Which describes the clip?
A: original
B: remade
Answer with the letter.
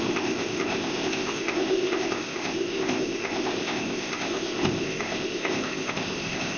B